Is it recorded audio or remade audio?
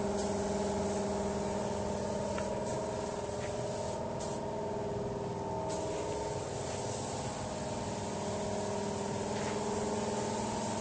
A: recorded